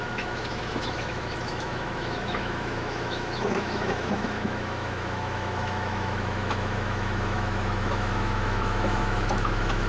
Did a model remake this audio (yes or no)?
yes